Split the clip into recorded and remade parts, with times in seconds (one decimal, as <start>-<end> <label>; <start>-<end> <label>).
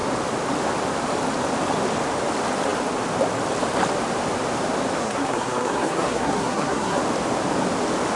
0.0-5.0 recorded; 5.0-7.0 remade; 7.0-8.2 recorded